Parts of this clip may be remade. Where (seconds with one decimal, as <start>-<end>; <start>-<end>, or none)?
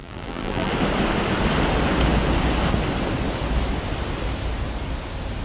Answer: 0.0-0.7